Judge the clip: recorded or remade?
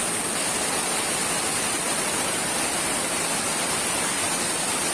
recorded